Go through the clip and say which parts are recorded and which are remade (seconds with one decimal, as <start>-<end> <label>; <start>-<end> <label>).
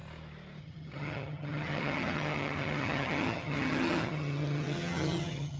0.0-0.6 recorded; 0.6-5.6 remade